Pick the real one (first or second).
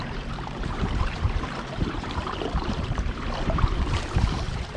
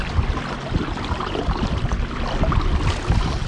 second